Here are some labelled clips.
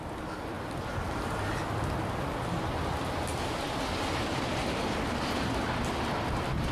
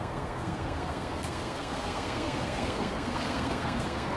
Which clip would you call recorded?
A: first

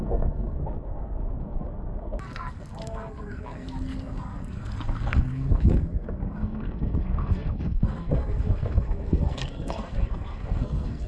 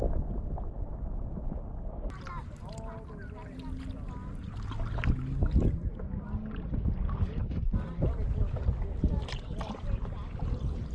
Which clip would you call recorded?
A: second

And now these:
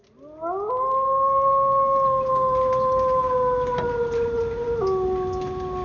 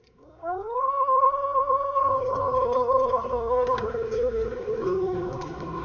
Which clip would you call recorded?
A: first